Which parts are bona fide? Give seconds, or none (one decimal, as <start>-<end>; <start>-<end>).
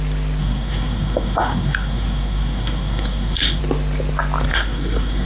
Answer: 0.0-0.4; 3.6-4.5